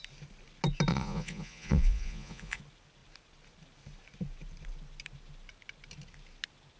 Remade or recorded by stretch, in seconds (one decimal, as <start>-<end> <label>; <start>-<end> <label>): 0.0-0.9 recorded; 0.9-2.6 remade; 2.6-6.8 recorded